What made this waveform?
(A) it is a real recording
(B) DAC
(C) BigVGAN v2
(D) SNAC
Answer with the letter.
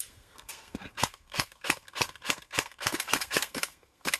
D